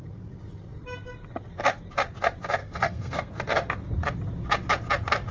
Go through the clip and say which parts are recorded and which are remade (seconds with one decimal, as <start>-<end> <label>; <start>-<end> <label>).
0.0-2.6 recorded; 2.6-3.3 remade; 3.3-5.3 recorded

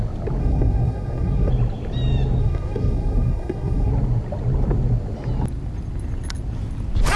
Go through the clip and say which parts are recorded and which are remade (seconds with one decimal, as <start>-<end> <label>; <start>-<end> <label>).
0.0-0.4 recorded; 0.4-1.5 remade; 1.5-2.4 recorded; 2.4-3.9 remade; 3.9-7.2 recorded